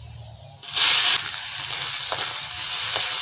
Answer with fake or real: real